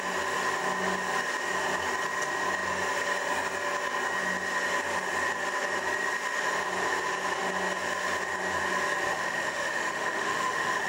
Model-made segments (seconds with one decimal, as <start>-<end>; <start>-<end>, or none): 9.1-10.9